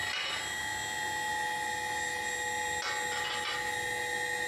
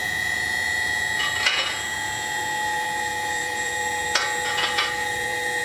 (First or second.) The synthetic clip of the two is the second